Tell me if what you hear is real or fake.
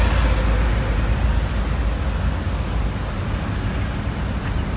real